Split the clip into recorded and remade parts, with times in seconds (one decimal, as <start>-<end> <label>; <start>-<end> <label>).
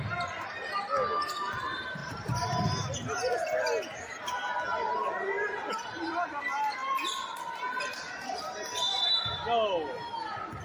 0.0-2.0 recorded; 2.0-2.5 remade; 2.5-10.6 recorded